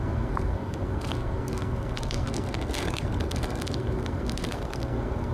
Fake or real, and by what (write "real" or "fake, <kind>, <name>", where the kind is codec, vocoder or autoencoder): fake, codec, SNAC